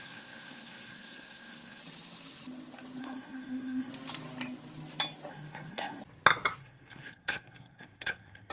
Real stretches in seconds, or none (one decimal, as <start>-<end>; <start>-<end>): 1.8-3.0; 3.9-5.3; 6.0-6.6